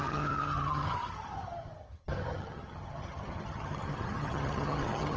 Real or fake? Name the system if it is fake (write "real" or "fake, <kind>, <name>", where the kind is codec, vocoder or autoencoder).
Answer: fake, vocoder, HiFi-GAN